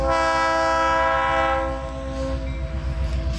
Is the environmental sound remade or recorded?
recorded